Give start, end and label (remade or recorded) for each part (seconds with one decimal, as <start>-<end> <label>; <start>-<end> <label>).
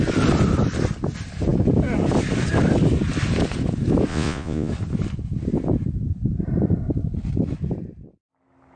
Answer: 0.0-4.1 recorded; 4.1-4.7 remade; 4.7-8.8 recorded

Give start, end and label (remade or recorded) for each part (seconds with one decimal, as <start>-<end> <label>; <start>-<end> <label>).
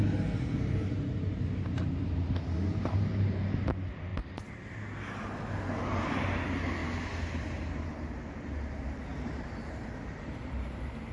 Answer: 0.0-9.1 recorded; 9.1-11.1 remade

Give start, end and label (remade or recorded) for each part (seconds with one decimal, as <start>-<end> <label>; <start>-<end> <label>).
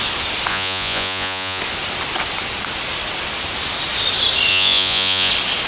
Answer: 0.0-0.5 recorded; 0.5-1.6 remade; 1.6-4.5 recorded; 4.5-5.3 remade; 5.3-5.7 recorded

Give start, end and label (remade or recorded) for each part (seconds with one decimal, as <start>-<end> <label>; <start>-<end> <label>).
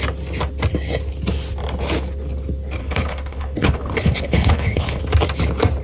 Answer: 0.0-2.8 recorded; 2.8-5.0 remade; 5.0-5.8 recorded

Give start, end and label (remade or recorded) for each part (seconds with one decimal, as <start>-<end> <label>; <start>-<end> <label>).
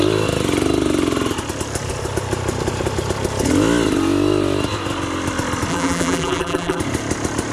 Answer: 0.0-5.7 recorded; 5.7-6.8 remade; 6.8-7.5 recorded